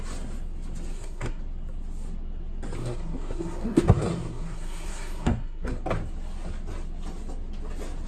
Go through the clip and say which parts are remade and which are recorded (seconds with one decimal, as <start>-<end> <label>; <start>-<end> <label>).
0.0-0.9 recorded; 0.9-1.4 remade; 1.4-2.8 recorded; 2.8-5.8 remade; 5.8-8.1 recorded